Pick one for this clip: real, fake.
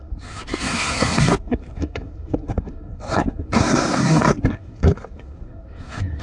fake